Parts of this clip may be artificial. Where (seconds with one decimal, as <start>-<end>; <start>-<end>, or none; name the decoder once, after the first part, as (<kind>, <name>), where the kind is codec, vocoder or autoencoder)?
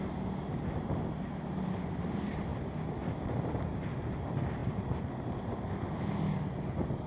2.5-3.0 (vocoder, BigVGAN v2)